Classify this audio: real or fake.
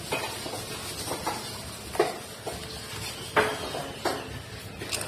real